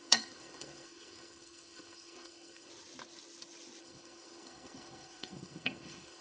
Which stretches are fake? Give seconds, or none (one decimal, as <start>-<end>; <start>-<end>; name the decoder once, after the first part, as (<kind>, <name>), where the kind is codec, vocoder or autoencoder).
0.0-2.7 (codec, SNAC); 3.8-6.2